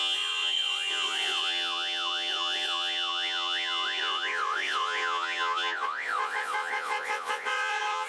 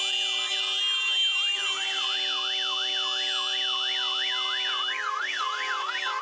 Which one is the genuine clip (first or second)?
second